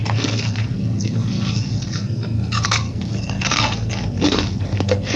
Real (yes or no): no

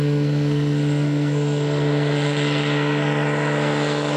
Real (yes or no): no